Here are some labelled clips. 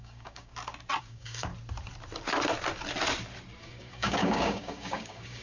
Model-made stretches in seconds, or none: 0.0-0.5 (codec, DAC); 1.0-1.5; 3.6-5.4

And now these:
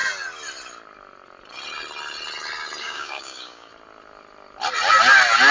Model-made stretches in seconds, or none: 2.8-3.7 (codec, DAC)

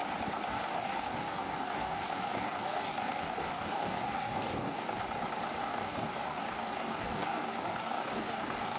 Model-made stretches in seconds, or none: 0.5-5.0 (codec, DAC); 5.6-8.8

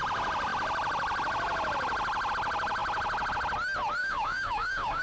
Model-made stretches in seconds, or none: 4.0-5.0 (codec, DAC)

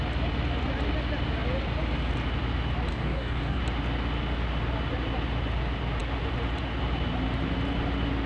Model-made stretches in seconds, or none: 2.9-3.6 (codec, DAC)

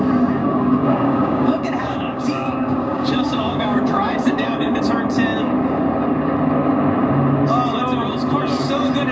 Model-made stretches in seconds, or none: 0.4-4.8 (codec, DAC)

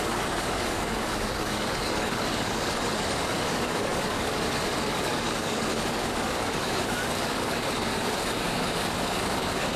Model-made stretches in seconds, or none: 0.0-9.8 (codec, DAC)

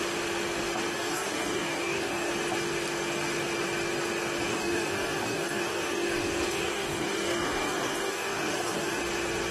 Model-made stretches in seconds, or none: 0.9-2.3 (codec, DAC); 4.5-9.0